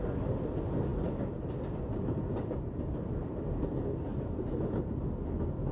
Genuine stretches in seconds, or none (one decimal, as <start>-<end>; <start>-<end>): 0.0-0.9; 3.4-4.1; 5.0-5.7